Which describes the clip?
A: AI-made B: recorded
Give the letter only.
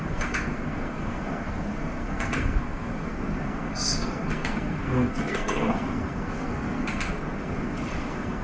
A